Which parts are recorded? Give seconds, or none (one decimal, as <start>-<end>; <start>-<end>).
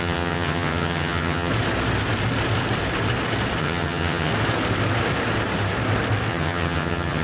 1.5-3.6; 4.3-6.3